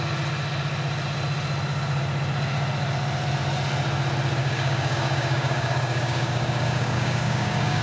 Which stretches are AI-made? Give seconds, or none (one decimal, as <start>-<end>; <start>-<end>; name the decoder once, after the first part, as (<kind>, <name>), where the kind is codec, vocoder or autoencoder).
4.4-7.8 (codec, DAC)